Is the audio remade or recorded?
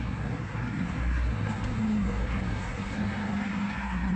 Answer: remade